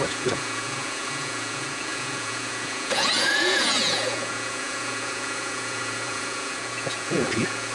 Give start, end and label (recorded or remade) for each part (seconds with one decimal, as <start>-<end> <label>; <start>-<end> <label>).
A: 0.0-7.7 remade